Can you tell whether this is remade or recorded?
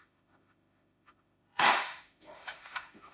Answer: remade